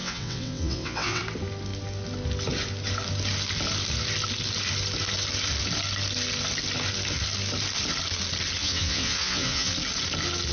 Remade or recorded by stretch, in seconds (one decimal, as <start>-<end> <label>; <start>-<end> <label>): 0.0-1.2 remade; 1.2-8.6 recorded; 8.6-9.7 remade; 9.7-10.5 recorded